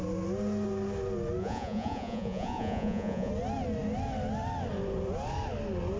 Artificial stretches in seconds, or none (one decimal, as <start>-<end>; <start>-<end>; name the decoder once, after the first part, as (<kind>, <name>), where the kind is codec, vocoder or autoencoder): 1.4-3.3 (vocoder, Vocos)